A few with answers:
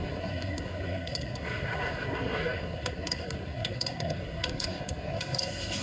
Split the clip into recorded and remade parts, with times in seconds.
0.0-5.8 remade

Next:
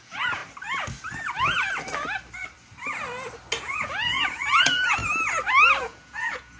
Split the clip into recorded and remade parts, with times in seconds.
0.0-0.4 remade; 0.4-3.6 recorded; 3.6-5.0 remade; 5.0-5.8 recorded; 5.8-6.6 remade

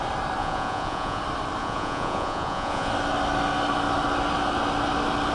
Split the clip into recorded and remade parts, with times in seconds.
0.0-0.4 recorded; 0.4-1.2 remade; 1.2-1.6 recorded; 1.6-2.9 remade; 2.9-5.3 recorded